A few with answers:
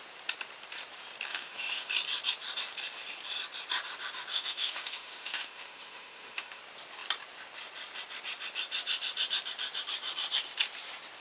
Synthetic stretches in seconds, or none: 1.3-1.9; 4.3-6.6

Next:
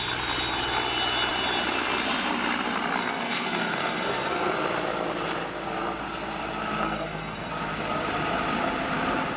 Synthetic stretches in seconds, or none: 3.0-4.5; 6.8-7.5